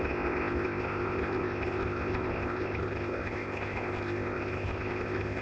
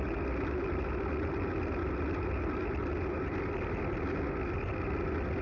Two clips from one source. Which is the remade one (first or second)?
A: first